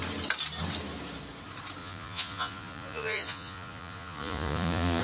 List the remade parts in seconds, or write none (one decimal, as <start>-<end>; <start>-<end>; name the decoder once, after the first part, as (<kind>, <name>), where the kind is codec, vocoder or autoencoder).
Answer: 1.8-5.0 (vocoder, Vocos)